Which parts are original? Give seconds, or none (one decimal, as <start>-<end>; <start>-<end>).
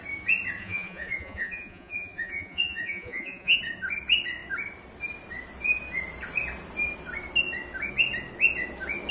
0.0-0.6; 3.6-9.1